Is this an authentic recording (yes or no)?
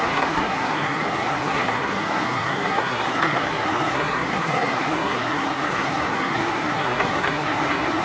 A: no